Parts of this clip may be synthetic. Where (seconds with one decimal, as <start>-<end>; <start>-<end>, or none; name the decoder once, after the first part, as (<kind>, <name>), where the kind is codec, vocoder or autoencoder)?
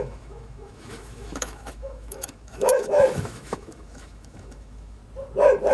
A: 0.0-5.0 (autoencoder, DAC-VAE)